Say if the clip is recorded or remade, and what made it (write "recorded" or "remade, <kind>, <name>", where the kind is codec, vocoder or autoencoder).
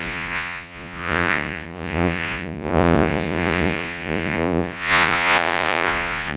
remade, vocoder, Vocos